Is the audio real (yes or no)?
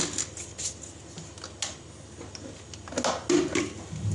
yes